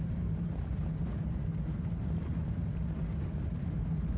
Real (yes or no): yes